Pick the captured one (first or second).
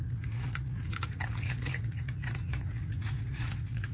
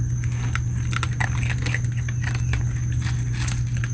second